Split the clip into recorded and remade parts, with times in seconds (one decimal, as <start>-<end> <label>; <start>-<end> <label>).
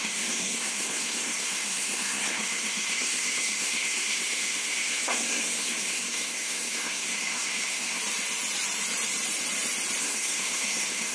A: 0.0-8.0 remade; 8.0-10.0 recorded; 10.0-11.1 remade